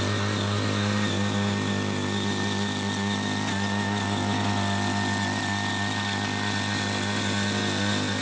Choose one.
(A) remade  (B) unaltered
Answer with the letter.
B